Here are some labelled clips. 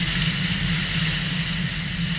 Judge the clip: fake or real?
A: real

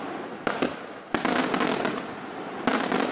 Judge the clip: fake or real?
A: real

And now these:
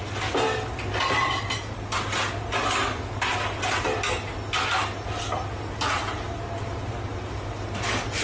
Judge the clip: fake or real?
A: real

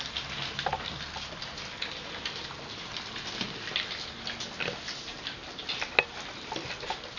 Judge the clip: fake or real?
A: real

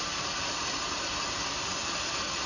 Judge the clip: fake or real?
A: fake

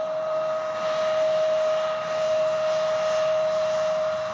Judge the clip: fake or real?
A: real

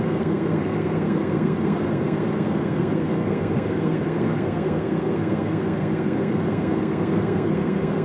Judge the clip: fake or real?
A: fake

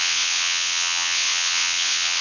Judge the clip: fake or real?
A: fake